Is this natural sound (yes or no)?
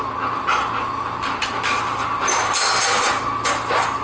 yes